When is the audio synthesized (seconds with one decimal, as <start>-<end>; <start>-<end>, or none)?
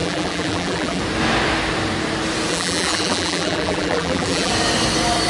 0.0-1.0; 2.5-4.5